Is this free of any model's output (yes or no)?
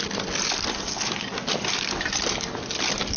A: yes